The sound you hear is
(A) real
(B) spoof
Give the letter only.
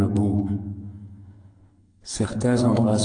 B